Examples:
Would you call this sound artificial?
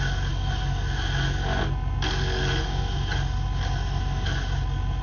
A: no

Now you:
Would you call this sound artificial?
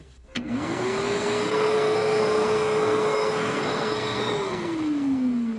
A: yes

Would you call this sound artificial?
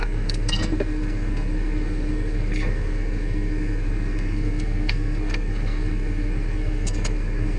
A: yes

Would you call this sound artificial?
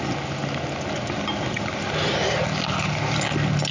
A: no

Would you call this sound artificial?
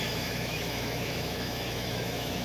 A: yes